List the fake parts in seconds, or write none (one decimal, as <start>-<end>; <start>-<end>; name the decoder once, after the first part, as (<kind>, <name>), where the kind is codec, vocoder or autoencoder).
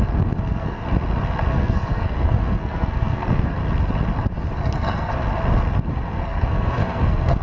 0.0-0.8 (codec, SNAC); 1.5-3.6; 4.5-5.1; 5.9-7.4